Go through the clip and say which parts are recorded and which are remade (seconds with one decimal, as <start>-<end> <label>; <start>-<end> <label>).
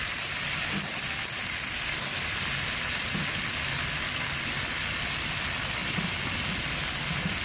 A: 0.0-7.4 recorded